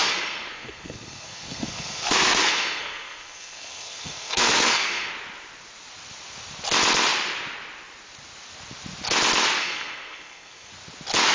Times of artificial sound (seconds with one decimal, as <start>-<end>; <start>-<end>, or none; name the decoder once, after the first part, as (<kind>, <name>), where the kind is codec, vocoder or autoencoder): 0.0-5.1 (codec, SNAC); 9.6-10.7